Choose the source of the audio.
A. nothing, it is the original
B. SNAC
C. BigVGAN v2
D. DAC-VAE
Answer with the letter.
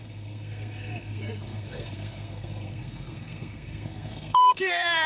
B